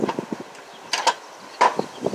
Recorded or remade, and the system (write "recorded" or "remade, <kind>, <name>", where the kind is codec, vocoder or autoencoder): recorded